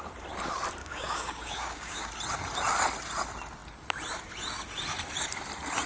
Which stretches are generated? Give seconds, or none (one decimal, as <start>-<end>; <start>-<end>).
0.8-2.1